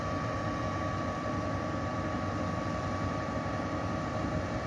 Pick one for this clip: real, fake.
fake